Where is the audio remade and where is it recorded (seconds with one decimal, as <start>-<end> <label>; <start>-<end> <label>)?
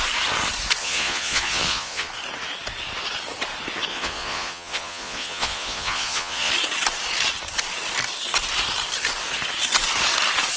0.0-0.8 recorded; 0.8-2.1 remade; 2.1-3.9 recorded; 3.9-6.5 remade; 6.5-10.6 recorded